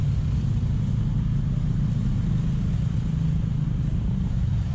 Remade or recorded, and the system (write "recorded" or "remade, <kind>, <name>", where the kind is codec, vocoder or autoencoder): recorded